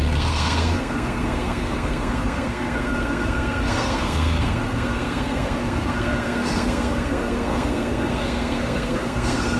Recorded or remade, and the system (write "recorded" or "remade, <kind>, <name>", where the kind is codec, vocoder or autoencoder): remade, codec, SNAC